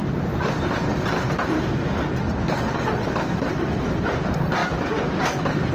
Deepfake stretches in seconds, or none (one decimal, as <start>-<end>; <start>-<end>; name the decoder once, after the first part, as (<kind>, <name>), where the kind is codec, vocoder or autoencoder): none